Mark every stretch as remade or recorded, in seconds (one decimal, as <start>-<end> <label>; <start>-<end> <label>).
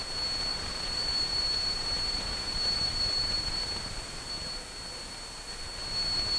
0.0-0.5 recorded; 0.5-4.3 remade; 4.3-6.4 recorded